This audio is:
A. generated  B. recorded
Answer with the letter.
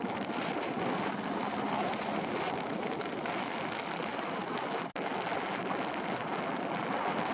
B